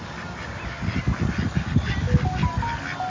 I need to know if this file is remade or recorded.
recorded